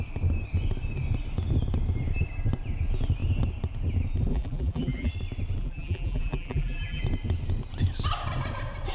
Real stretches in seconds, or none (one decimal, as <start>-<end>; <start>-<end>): 0.0-4.3; 5.1-5.6; 7.0-8.9